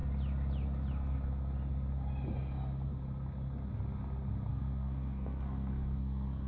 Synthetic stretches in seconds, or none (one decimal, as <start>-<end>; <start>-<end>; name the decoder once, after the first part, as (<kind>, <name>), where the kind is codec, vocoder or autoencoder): 4.5-6.5 (codec, SNAC)